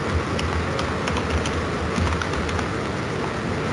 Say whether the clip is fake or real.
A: real